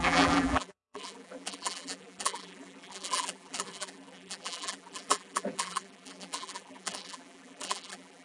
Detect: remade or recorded remade